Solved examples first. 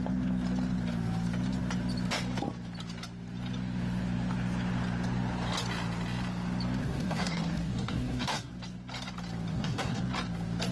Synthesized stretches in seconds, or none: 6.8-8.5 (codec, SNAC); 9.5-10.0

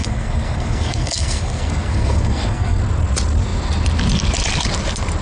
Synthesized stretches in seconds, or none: 0.0-2.8 (codec, SNAC)

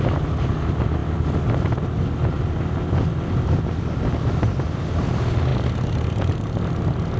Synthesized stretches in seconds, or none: none